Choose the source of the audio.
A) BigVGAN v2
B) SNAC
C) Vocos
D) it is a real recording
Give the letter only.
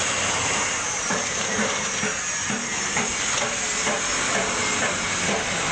A